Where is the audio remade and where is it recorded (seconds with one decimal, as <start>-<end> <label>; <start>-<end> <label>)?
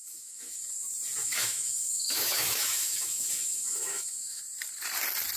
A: 0.0-0.6 remade; 0.6-1.2 recorded; 1.2-4.4 remade; 4.4-5.4 recorded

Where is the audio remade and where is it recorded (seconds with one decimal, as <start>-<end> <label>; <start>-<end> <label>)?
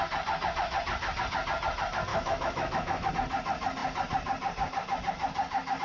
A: 0.0-2.1 recorded; 2.1-3.1 remade; 3.1-5.8 recorded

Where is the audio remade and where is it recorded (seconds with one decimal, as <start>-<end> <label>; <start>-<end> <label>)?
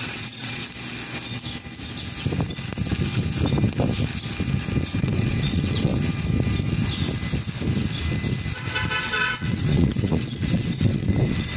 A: 0.0-0.6 remade; 0.6-5.0 recorded; 5.0-5.9 remade; 5.9-9.0 recorded; 9.0-11.6 remade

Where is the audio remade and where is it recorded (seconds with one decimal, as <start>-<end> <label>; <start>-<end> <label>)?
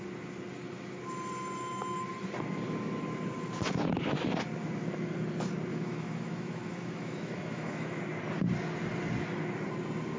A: 0.0-5.7 recorded; 5.7-8.0 remade; 8.0-10.2 recorded